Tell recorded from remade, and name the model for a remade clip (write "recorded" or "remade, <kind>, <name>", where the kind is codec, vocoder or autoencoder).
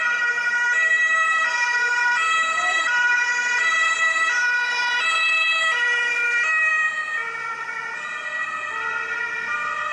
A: recorded